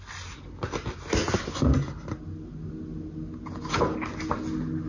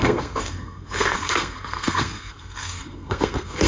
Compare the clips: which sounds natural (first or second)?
first